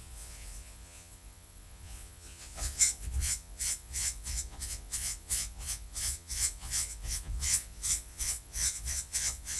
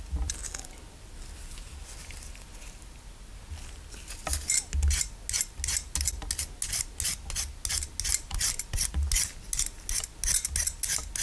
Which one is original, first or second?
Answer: second